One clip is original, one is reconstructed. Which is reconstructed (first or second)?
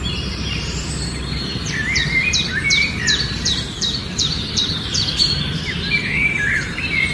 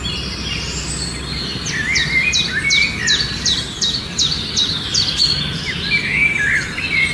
first